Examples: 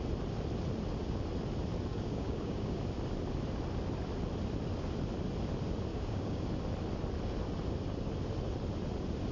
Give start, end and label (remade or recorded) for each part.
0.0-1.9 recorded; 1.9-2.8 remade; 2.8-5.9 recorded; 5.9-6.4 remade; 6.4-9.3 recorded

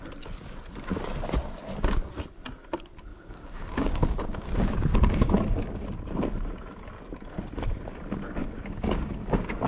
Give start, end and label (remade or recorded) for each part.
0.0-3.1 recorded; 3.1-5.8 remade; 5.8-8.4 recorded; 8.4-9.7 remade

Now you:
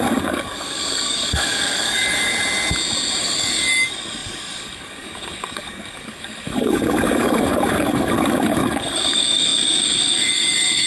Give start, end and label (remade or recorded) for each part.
0.0-2.3 remade; 2.3-3.2 recorded; 3.2-10.9 remade

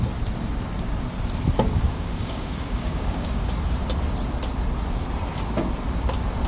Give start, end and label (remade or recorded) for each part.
0.0-1.9 recorded; 1.9-3.5 remade; 3.5-6.5 recorded

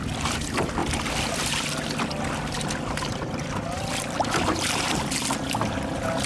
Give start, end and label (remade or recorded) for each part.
0.0-6.3 recorded